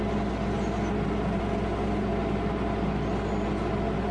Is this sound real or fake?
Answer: real